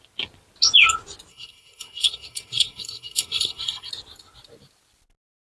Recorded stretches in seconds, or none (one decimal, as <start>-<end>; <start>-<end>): 0.0-1.3; 3.9-5.5